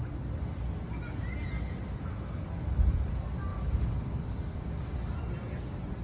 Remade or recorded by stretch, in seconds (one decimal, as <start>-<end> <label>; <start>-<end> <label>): 0.0-3.5 recorded; 3.5-5.1 remade; 5.1-6.0 recorded